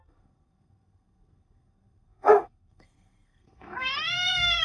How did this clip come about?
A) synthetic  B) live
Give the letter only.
A